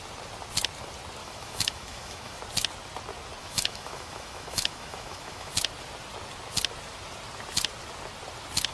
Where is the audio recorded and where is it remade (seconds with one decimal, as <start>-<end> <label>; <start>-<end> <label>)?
0.0-1.2 recorded; 1.2-2.4 remade; 2.4-3.4 recorded; 3.4-5.5 remade; 5.5-8.7 recorded